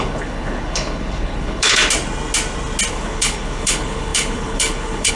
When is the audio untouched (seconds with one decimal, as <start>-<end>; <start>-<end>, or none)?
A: 1.8-2.9